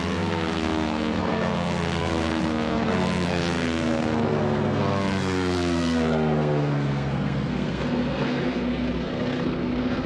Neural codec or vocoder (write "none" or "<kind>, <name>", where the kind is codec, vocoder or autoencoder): codec, SNAC